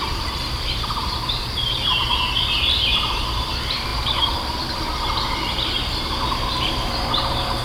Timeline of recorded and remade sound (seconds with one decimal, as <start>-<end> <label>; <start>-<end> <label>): 0.0-0.4 remade; 0.4-1.0 recorded; 1.0-7.6 remade

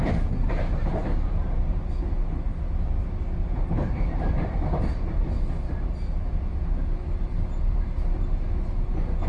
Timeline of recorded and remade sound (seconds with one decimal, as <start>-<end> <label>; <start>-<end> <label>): 0.0-9.3 recorded

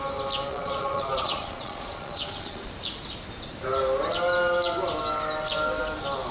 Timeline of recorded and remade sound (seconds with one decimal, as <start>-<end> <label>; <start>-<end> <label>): 0.0-0.5 recorded; 0.5-2.7 remade; 2.7-6.3 recorded